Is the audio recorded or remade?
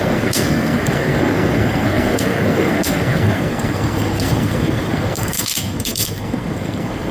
remade